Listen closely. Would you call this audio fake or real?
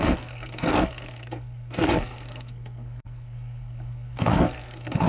fake